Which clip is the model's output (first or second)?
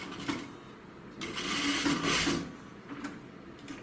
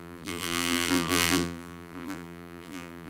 second